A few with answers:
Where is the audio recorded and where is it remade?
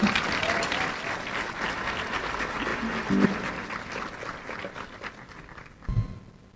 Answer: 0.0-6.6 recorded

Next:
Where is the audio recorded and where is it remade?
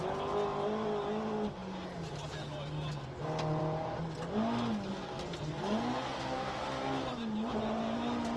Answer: 0.0-4.9 recorded; 4.9-6.6 remade; 6.6-8.4 recorded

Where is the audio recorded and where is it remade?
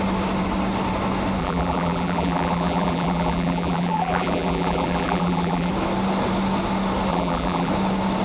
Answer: 0.0-1.4 recorded; 1.4-5.7 remade; 5.7-7.1 recorded; 7.1-7.7 remade; 7.7-8.2 recorded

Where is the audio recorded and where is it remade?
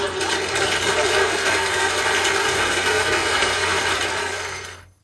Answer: 0.0-1.2 recorded; 1.2-1.9 remade; 1.9-2.4 recorded; 2.4-3.8 remade; 3.8-4.2 recorded; 4.2-5.0 remade